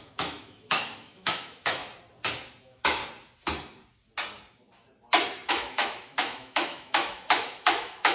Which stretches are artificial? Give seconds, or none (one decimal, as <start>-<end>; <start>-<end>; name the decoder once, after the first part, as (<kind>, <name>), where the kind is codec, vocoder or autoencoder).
0.0-1.8 (autoencoder, DAC-VAE); 2.6-3.0; 5.5-8.1